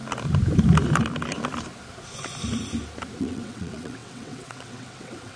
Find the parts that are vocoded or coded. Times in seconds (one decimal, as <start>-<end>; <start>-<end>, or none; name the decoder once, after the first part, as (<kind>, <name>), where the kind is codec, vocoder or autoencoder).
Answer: 3.2-5.4 (vocoder, WaveNeXt)